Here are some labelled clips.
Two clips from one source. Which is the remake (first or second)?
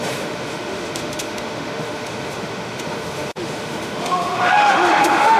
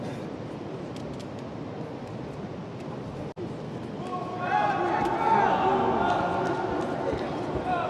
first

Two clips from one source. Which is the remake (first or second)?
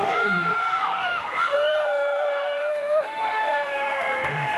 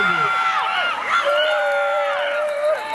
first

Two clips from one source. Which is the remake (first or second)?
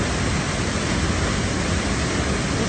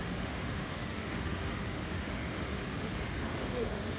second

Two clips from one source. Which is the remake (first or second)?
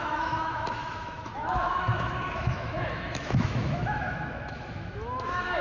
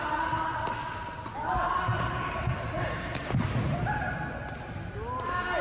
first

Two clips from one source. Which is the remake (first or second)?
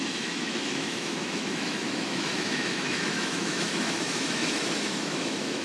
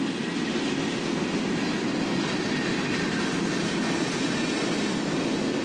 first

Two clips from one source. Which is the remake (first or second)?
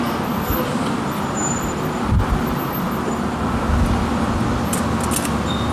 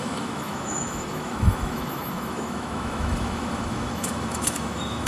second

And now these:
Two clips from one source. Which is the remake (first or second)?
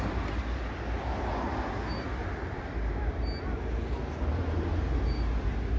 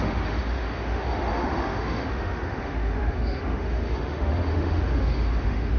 second